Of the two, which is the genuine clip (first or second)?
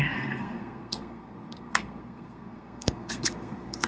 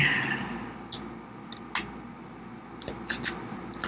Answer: second